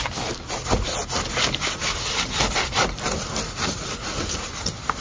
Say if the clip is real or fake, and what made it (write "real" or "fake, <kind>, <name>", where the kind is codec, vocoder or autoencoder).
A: real